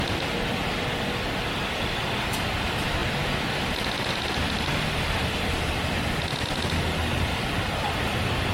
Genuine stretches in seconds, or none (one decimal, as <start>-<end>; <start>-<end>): 0.0-8.5